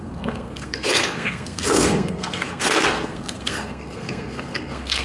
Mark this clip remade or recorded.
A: remade